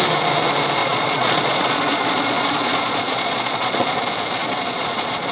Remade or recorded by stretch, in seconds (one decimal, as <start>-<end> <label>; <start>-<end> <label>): 0.0-0.8 recorded; 0.8-4.0 remade; 4.0-4.4 recorded; 4.4-5.3 remade